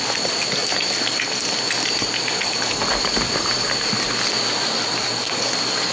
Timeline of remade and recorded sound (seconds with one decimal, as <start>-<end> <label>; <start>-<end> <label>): 0.0-5.9 recorded